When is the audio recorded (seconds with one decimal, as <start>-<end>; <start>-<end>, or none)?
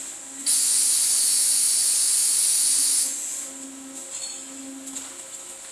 0.0-0.4; 3.4-5.7